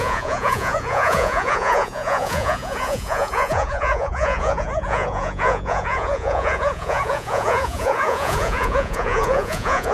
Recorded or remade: remade